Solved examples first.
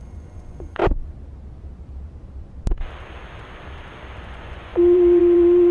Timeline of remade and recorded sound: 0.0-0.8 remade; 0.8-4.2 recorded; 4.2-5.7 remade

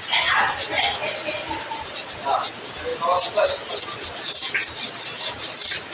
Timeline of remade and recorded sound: 0.0-5.9 recorded

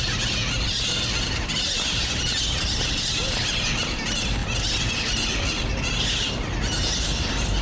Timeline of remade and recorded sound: 0.0-7.6 recorded

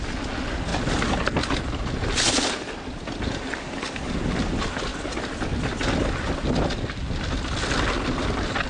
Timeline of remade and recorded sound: 0.0-8.7 recorded

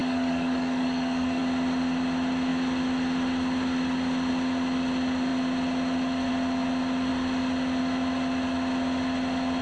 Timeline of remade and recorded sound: 0.0-1.4 remade; 1.4-9.6 recorded

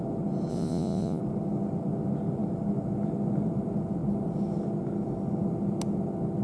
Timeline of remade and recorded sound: 0.0-0.5 recorded; 0.5-1.2 remade; 1.2-6.4 recorded

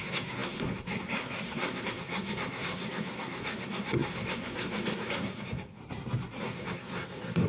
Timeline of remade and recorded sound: 0.0-5.8 remade; 5.8-6.4 recorded; 6.4-7.5 remade

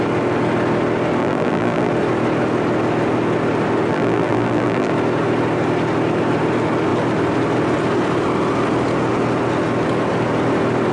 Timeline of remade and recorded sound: 0.0-1.2 recorded; 1.2-1.9 remade; 1.9-3.9 recorded; 3.9-4.9 remade; 4.9-10.9 recorded